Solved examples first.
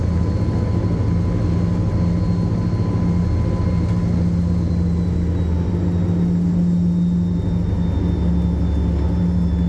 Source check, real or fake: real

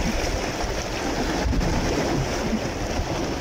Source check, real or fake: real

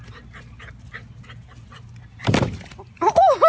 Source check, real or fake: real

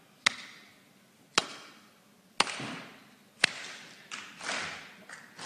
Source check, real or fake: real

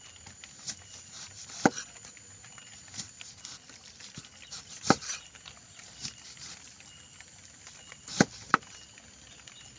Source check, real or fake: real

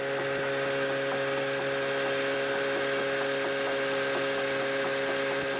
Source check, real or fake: real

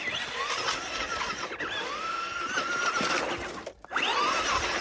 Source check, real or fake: real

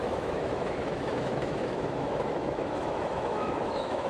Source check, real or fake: fake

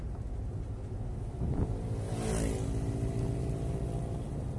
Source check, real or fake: real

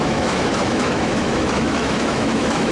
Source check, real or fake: fake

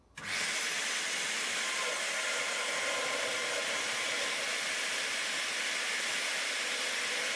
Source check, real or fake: real